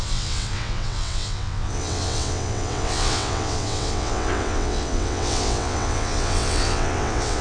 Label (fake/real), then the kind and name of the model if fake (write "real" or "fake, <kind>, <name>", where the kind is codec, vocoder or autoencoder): fake, vocoder, WaveNeXt